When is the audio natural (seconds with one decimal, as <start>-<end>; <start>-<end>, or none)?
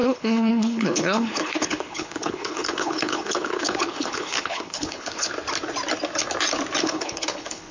5.3-6.8